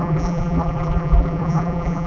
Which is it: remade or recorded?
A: remade